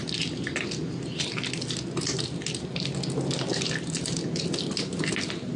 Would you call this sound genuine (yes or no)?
yes